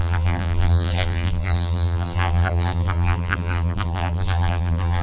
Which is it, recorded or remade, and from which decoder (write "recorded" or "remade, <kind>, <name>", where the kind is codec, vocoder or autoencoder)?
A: remade, vocoder, BigVGAN v2